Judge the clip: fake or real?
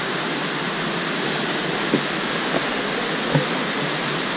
real